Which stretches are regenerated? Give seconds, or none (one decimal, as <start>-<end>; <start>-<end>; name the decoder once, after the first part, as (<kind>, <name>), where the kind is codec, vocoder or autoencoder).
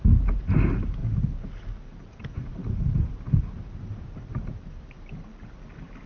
none